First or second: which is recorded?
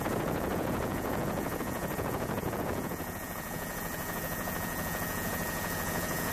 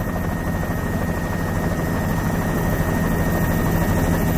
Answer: second